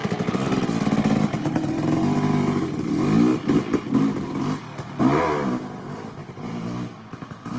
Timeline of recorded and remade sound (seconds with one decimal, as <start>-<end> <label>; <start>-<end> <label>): 0.0-6.2 recorded; 6.2-7.6 remade